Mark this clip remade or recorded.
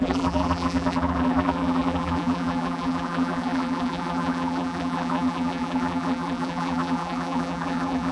remade